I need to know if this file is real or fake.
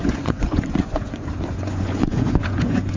fake